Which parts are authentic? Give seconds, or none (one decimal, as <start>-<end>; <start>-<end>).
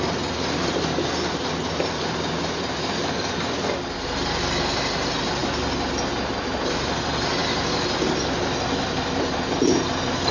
0.0-10.3